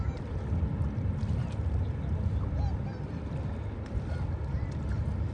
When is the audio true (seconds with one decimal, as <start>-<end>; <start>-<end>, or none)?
0.0-5.3